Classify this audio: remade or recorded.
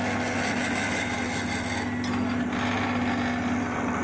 recorded